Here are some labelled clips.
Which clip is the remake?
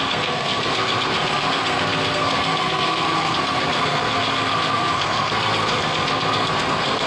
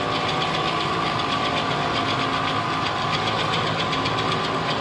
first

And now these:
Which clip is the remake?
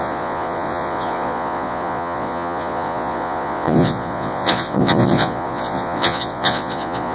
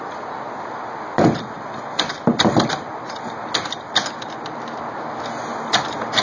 first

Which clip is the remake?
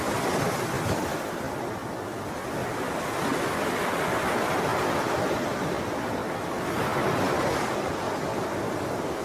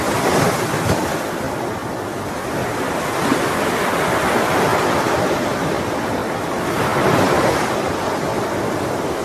second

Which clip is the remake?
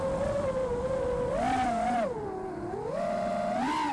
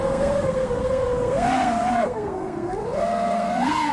second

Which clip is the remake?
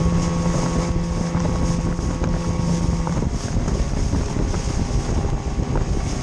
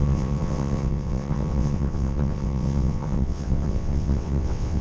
second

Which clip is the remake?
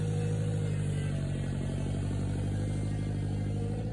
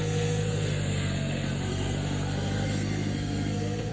second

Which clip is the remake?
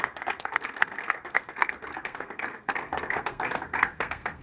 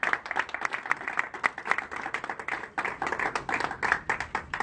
first